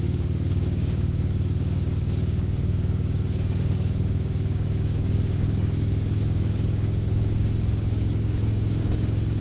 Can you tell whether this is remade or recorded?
remade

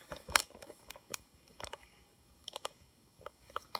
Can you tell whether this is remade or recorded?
remade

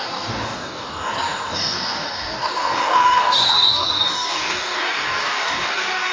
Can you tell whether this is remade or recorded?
remade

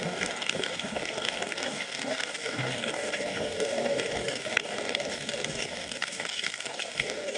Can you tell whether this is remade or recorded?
remade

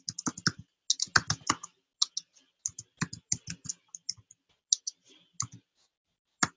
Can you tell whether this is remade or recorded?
recorded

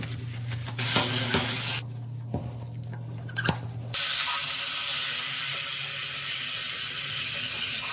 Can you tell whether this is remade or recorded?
recorded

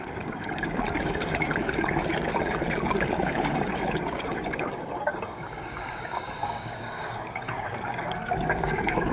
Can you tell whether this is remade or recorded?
remade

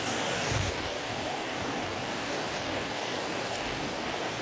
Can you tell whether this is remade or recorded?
remade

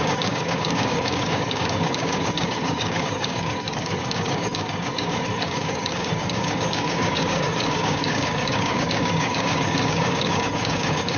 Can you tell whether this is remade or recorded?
remade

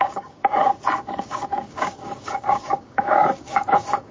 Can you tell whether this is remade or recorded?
remade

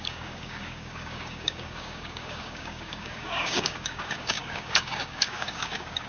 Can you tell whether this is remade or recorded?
remade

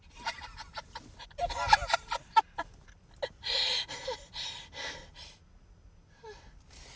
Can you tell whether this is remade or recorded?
recorded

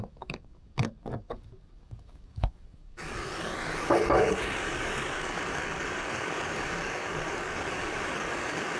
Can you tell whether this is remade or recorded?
remade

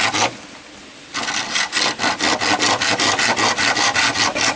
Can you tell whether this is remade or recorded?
recorded